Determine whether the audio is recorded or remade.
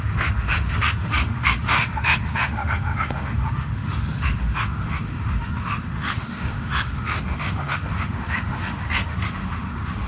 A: remade